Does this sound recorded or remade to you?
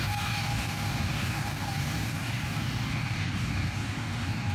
remade